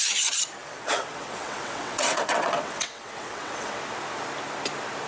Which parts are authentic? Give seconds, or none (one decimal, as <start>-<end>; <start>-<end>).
0.0-0.6; 3.7-5.1